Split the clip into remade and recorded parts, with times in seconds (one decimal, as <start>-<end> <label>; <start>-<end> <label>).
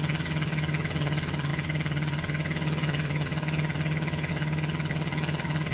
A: 0.0-5.7 remade